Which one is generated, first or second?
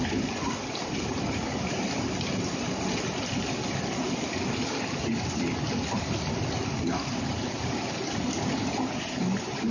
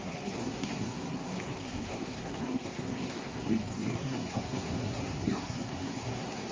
second